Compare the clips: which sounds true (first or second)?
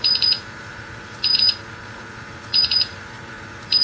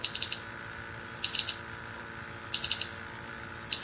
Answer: second